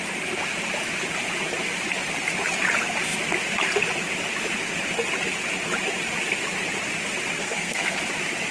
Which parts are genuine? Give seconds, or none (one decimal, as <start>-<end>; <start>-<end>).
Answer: 0.0-7.4; 8.0-8.5